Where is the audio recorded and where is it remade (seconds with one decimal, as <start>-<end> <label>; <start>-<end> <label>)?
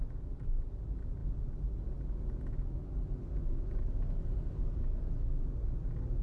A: 0.0-6.2 recorded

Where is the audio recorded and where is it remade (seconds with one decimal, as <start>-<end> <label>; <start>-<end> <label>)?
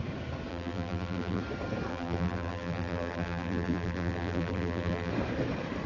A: 0.0-0.5 recorded; 0.5-1.4 remade; 1.4-1.9 recorded; 1.9-5.1 remade; 5.1-5.9 recorded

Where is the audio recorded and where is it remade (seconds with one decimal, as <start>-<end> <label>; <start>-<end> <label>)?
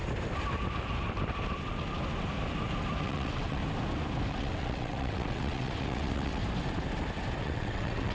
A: 0.0-3.0 recorded; 3.0-3.6 remade; 3.6-4.3 recorded; 4.3-6.4 remade; 6.4-7.4 recorded; 7.4-8.1 remade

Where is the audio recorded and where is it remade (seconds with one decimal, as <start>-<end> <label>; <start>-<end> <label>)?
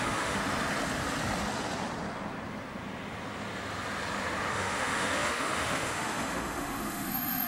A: 0.0-0.4 remade; 0.4-4.5 recorded; 4.5-7.5 remade